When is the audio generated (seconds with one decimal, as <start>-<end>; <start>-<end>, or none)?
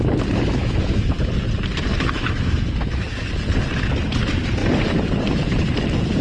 0.6-1.3; 1.9-3.3